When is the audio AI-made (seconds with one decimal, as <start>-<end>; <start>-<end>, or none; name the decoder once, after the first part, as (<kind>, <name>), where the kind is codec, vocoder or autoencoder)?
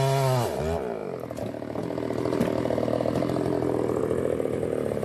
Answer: none